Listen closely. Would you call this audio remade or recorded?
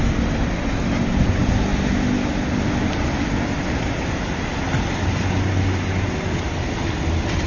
recorded